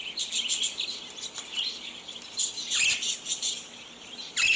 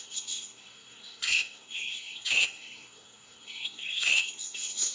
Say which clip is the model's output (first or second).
second